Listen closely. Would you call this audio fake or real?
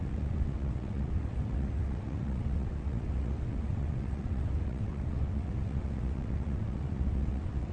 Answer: fake